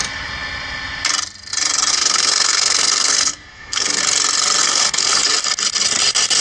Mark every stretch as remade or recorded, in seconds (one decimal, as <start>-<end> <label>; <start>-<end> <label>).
0.0-1.9 recorded; 1.9-4.0 remade; 4.0-4.6 recorded; 4.6-5.2 remade; 5.2-6.4 recorded